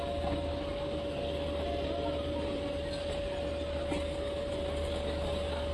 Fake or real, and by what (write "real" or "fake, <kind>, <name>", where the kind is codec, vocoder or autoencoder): real